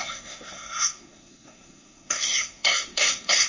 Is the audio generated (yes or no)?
yes